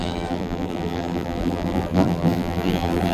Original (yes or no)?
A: no